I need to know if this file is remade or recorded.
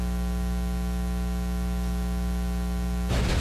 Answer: recorded